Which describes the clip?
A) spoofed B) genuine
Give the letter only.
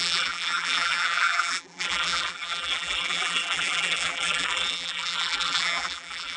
A